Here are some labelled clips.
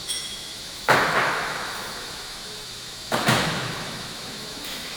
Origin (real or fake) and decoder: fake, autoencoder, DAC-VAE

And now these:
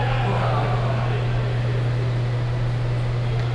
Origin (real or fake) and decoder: real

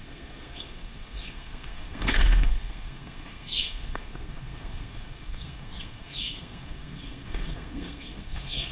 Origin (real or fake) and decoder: fake, codec, SNAC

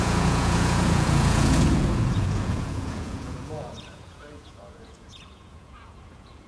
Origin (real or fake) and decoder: fake, vocoder, Vocos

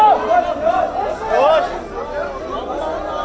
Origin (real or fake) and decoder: real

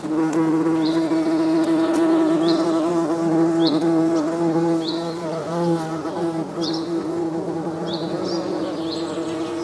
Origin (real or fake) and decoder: fake, vocoder, Vocos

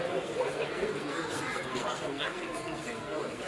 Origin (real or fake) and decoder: fake, codec, SNAC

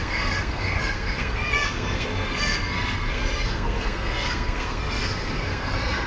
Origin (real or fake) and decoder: fake, codec, SNAC